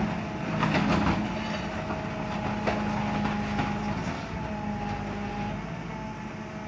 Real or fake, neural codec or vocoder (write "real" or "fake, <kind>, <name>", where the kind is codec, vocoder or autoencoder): real